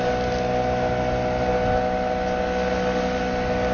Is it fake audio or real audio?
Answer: real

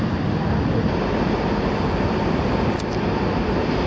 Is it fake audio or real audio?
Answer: real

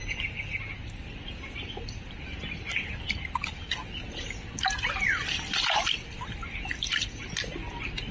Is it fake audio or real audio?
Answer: real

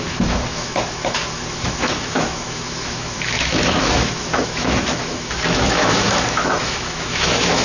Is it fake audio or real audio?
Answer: fake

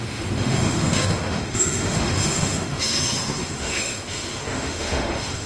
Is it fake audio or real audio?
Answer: fake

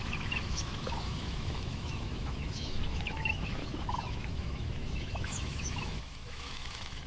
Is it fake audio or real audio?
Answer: fake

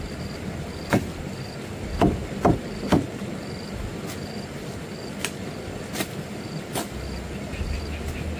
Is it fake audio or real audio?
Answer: real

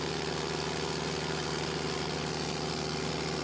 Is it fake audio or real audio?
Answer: real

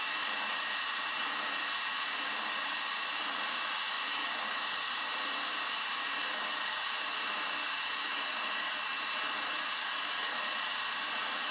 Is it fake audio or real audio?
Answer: fake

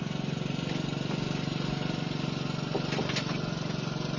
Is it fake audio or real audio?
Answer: real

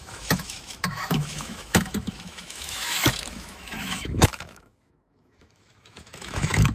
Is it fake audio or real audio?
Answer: fake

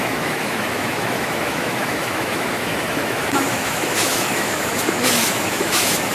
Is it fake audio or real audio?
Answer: fake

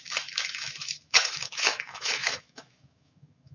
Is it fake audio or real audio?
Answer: fake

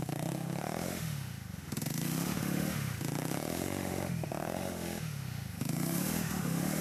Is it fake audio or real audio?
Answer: fake